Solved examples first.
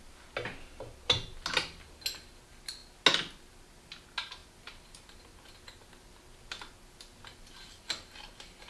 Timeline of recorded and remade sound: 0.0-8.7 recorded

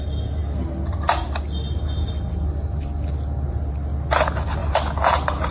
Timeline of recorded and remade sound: 0.0-5.5 recorded

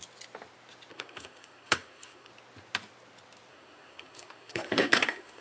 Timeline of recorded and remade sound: 0.0-0.9 recorded; 0.9-2.3 remade; 2.3-3.5 recorded; 3.5-5.4 remade

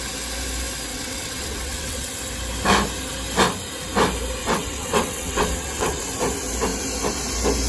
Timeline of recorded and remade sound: 0.0-0.9 recorded; 0.9-2.2 remade; 2.2-4.4 recorded; 4.4-6.0 remade; 6.0-7.7 recorded

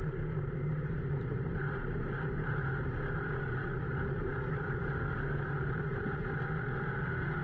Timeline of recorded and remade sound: 0.0-7.4 remade

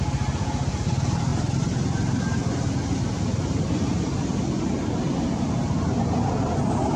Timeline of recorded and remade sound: 0.0-7.0 recorded